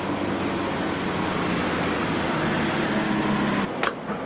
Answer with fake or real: real